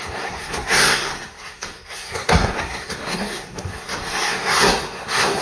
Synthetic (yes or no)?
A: yes